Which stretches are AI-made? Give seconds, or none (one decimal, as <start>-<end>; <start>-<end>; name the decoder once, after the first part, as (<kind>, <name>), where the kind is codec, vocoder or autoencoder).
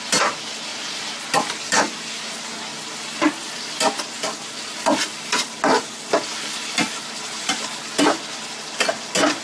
none